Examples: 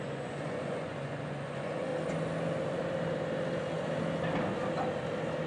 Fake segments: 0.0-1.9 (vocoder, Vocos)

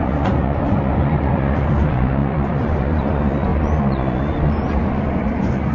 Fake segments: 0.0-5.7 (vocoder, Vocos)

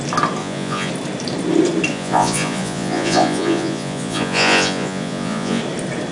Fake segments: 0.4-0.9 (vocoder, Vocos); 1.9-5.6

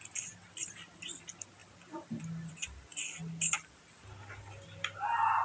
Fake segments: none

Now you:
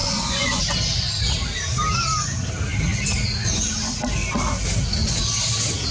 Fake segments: 0.0-0.6 (vocoder, Vocos)

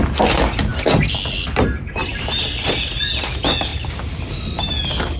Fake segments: none